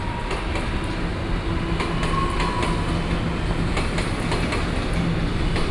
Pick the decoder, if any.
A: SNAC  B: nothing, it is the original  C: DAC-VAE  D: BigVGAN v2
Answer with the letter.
B